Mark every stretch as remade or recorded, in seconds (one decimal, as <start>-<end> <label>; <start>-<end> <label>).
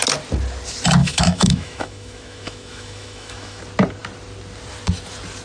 0.0-1.0 recorded; 1.0-3.6 remade; 3.6-5.4 recorded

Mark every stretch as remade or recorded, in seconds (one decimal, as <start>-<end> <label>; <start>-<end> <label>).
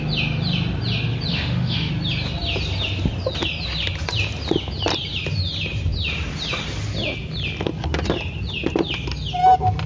0.0-1.3 recorded; 1.3-1.9 remade; 1.9-9.9 recorded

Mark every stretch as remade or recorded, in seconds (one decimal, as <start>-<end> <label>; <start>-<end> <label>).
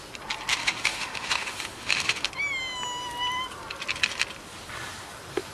0.0-0.5 recorded; 0.5-2.3 remade; 2.3-5.5 recorded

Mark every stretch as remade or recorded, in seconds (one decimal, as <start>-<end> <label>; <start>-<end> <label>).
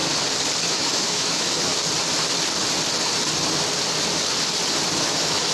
0.0-0.7 recorded; 0.7-1.7 remade; 1.7-5.0 recorded; 5.0-5.5 remade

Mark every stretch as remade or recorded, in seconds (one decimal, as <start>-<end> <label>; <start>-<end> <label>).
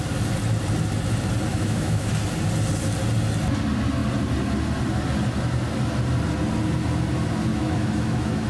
0.0-1.5 recorded; 1.5-2.1 remade; 2.1-7.5 recorded; 7.5-8.5 remade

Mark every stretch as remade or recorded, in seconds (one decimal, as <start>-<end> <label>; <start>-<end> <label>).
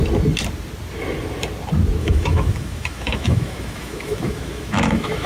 0.0-2.0 recorded; 2.0-5.3 remade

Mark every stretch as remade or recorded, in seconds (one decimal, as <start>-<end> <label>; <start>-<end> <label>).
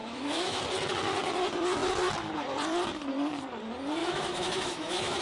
0.0-0.6 remade; 0.6-4.0 recorded; 4.0-5.2 remade